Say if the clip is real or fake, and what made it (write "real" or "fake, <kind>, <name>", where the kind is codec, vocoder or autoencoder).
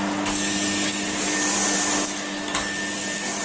real